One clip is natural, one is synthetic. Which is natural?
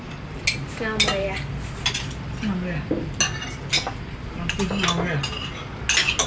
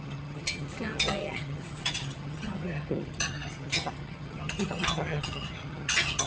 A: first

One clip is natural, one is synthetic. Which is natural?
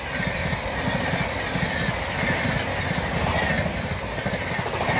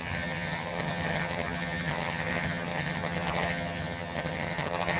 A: first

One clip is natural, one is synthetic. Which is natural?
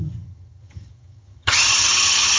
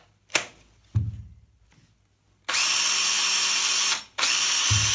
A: second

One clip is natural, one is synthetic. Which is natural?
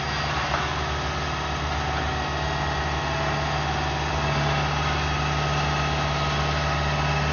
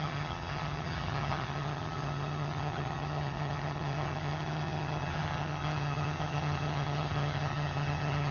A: first